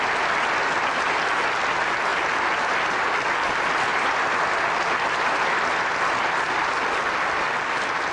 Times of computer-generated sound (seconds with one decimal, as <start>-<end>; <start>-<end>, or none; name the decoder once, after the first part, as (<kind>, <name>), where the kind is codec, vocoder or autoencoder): none

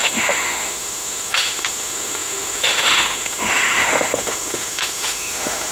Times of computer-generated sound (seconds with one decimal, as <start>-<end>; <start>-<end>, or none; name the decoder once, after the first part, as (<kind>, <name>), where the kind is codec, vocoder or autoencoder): 0.0-5.7 (autoencoder, DAC-VAE)

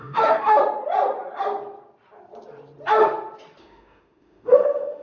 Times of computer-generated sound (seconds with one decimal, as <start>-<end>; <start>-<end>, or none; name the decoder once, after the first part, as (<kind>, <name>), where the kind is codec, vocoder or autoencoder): 0.0-0.6 (autoencoder, DAC-VAE); 3.6-5.0

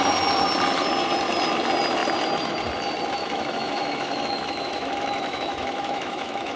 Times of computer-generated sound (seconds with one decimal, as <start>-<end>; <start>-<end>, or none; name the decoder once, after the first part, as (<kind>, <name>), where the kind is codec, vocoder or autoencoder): 3.2-6.6 (autoencoder, DAC-VAE)

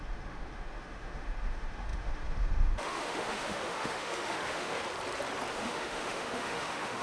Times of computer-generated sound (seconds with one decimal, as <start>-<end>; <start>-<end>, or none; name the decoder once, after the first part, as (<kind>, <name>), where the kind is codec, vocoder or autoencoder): 0.0-4.8 (autoencoder, DAC-VAE); 5.5-7.0

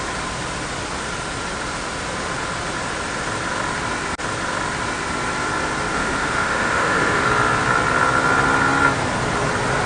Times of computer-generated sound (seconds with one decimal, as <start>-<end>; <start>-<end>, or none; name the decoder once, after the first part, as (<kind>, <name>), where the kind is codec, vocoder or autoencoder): 5.9-7.3 (autoencoder, DAC-VAE)

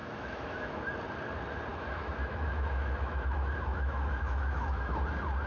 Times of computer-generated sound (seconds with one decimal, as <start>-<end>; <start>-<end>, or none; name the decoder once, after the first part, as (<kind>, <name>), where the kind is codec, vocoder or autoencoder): 0.0-0.8 (autoencoder, DAC-VAE); 1.7-5.0